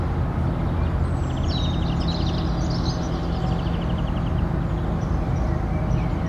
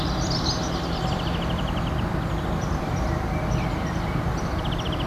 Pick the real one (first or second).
first